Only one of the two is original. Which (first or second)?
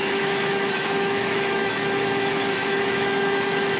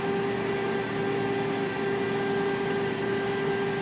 second